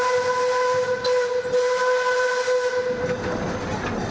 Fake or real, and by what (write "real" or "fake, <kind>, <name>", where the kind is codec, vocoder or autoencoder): real